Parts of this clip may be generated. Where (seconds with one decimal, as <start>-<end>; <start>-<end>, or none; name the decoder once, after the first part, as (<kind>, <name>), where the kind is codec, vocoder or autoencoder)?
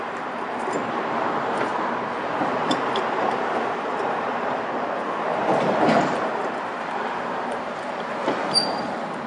0.0-1.7 (vocoder, BigVGAN v2); 2.5-9.3